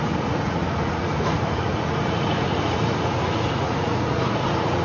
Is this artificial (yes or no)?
yes